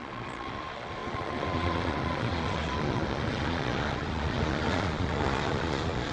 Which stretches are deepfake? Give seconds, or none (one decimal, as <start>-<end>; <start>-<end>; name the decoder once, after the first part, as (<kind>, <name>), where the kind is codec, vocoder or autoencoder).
0.0-6.1 (vocoder, Vocos)